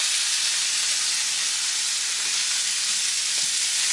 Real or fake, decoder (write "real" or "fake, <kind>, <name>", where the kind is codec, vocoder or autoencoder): real